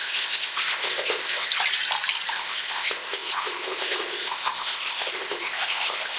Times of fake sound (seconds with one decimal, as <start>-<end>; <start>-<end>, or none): 0.0-1.5; 2.3-6.2